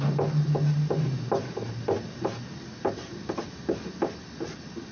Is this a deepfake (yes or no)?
no